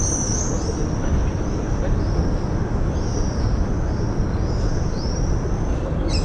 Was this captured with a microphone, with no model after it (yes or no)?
yes